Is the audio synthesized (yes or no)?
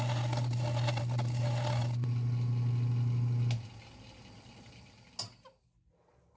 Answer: no